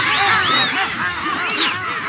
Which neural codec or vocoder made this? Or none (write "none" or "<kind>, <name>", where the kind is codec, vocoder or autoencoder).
none